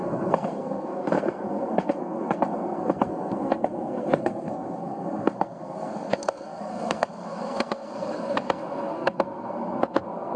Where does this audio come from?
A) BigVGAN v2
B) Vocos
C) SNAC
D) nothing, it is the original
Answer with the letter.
C